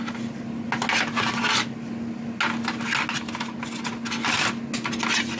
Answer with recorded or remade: recorded